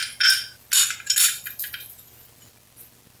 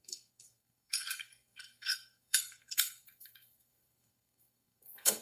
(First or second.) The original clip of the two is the first